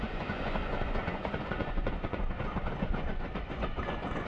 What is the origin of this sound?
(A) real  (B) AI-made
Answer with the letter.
B